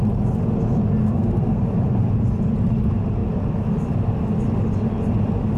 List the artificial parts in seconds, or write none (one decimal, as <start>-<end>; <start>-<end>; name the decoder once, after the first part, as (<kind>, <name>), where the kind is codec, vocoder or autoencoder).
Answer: 1.0-1.6 (codec, SNAC)